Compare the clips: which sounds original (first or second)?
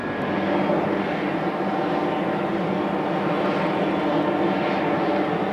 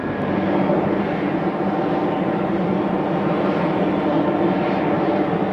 first